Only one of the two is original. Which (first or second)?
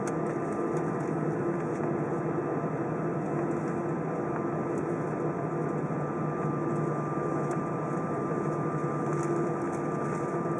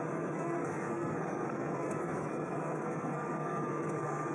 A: first